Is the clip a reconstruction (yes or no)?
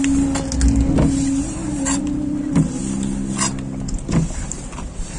no